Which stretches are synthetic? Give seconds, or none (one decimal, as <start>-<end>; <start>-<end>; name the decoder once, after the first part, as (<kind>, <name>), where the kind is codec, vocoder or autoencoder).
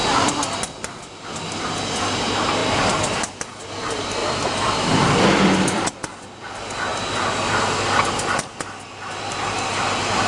2.6-3.4 (vocoder, BigVGAN v2); 4.2-5.9